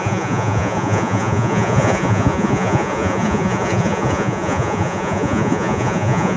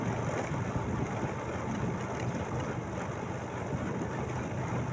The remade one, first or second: first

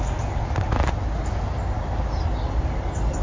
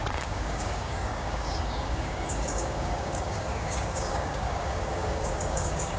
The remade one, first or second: second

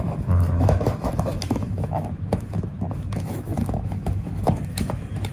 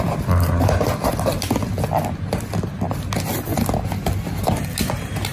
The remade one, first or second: first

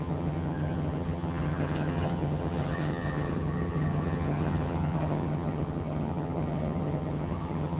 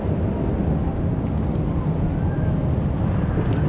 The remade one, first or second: first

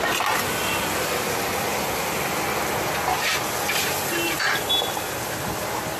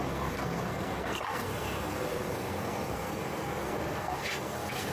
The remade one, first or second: second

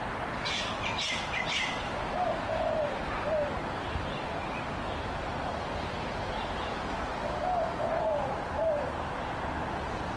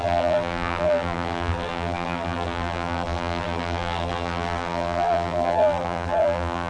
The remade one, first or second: second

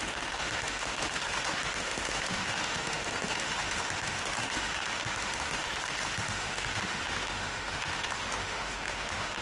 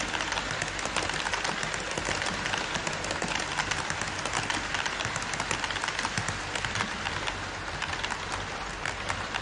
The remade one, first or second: first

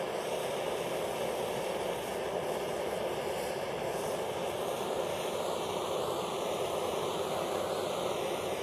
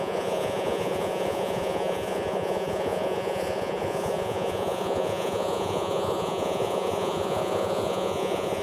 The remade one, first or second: second